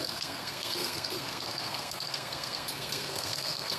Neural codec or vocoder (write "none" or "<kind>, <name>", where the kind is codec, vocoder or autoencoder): codec, SNAC